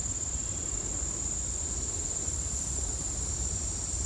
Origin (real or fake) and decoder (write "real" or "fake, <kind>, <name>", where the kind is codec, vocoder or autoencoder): real